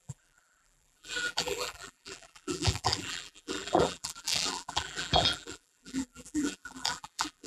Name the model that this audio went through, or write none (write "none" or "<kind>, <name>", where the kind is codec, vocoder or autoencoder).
vocoder, BigVGAN v2